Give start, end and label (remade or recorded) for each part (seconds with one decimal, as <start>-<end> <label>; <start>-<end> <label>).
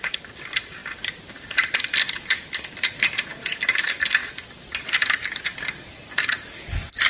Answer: 0.0-4.2 remade; 4.2-4.8 recorded; 4.8-5.5 remade; 5.5-6.3 recorded; 6.3-7.1 remade